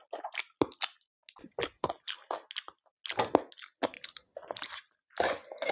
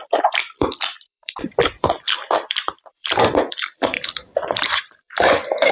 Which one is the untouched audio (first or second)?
first